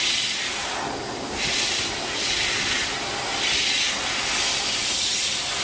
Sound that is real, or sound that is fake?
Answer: real